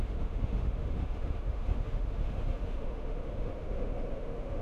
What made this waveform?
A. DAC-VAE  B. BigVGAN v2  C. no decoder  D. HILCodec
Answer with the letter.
A